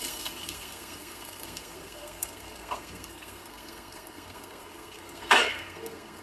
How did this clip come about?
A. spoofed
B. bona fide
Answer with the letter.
A